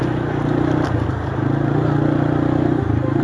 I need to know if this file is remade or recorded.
recorded